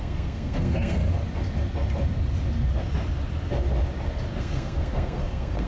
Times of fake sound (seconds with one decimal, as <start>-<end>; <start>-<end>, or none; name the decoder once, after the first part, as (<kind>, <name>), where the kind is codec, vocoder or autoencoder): 0.0-1.0 (codec, SNAC); 4.4-5.7